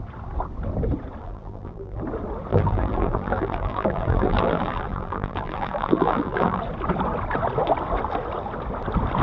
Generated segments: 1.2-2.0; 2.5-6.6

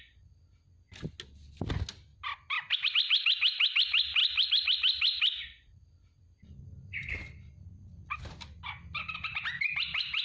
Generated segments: 2.1-2.9; 4.2-6.6; 8.9-9.7

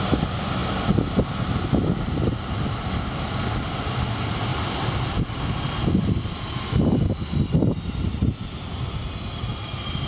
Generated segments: none

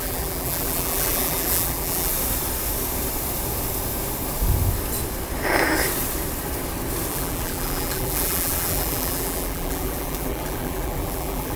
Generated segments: 0.0-2.1; 7.1-11.6